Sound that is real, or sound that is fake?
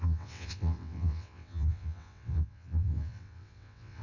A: fake